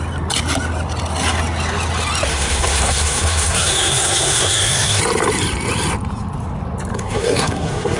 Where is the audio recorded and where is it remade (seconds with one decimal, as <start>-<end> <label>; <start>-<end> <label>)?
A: 0.0-2.3 recorded; 2.3-5.0 remade; 5.0-6.9 recorded; 6.9-8.0 remade